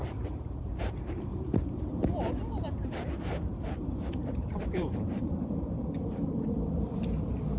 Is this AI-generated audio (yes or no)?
yes